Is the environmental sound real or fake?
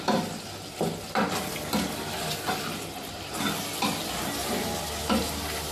real